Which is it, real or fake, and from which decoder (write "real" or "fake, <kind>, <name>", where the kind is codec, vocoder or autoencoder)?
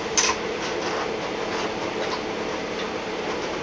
real